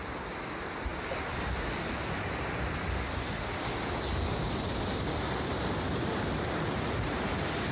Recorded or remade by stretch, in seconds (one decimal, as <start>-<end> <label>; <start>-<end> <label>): 0.0-7.7 recorded

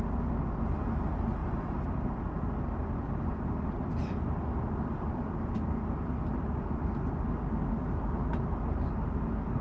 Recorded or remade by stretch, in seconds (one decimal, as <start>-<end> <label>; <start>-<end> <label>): 0.0-9.6 recorded

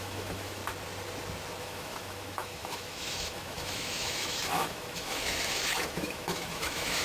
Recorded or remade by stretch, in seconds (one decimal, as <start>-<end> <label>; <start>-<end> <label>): 0.0-0.6 remade; 0.6-1.6 recorded; 1.6-7.0 remade